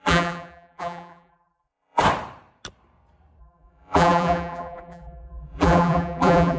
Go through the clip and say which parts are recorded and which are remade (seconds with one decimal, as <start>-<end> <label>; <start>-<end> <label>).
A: 0.0-2.0 remade; 2.0-3.4 recorded; 3.4-6.6 remade